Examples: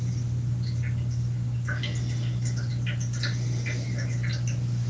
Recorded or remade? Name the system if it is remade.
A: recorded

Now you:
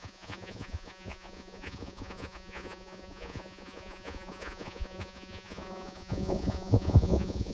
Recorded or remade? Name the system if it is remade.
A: remade, vocoder, Vocos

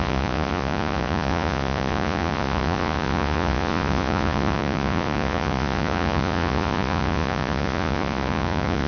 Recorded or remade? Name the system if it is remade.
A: remade, vocoder, Vocos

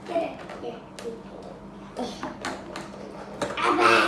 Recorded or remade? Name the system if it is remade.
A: recorded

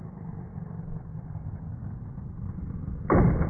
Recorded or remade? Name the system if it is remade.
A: recorded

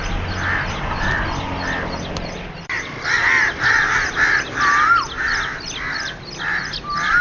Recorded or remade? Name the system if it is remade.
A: recorded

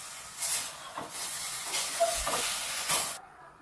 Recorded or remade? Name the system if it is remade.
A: remade, vocoder, Vocos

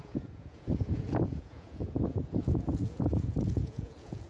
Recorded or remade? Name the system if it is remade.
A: remade, vocoder, Vocos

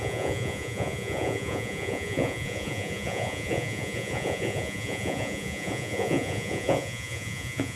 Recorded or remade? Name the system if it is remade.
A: remade, vocoder, Vocos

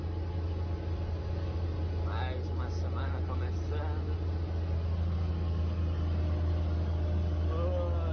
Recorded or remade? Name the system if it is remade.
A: recorded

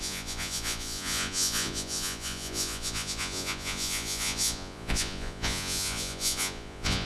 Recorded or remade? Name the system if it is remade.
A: remade, vocoder, Vocos